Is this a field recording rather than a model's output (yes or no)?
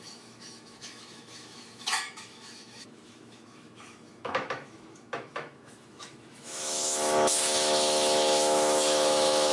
no